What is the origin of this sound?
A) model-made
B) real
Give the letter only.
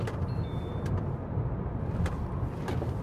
A